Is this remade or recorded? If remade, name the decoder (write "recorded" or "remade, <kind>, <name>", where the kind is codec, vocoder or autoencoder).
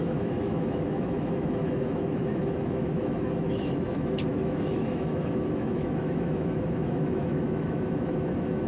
remade, autoencoder, DAC-VAE